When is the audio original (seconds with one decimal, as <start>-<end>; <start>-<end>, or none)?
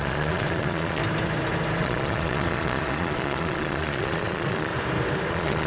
1.0-1.8; 4.7-5.3